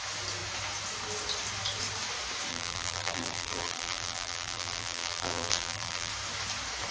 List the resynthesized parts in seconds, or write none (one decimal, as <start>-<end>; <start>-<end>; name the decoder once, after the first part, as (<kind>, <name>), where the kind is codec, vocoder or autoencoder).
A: 2.5-6.1 (vocoder, BigVGAN v2)